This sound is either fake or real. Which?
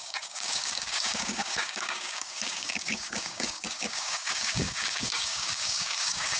fake